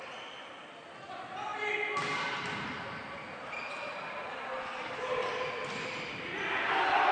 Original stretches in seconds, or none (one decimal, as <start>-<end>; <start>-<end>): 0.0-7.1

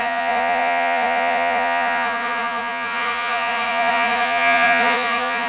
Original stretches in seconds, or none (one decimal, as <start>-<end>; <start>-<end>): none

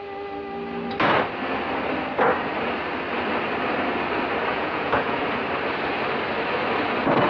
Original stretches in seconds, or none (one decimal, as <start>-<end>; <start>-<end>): 0.0-4.5; 5.2-7.3